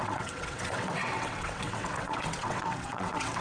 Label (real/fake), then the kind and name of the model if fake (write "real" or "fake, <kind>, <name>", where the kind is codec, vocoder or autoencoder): fake, vocoder, WaveNeXt